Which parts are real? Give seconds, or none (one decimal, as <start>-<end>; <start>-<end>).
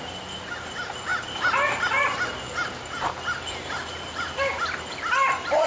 0.0-5.7